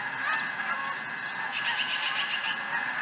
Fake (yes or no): no